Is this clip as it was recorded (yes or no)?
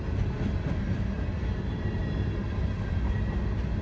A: yes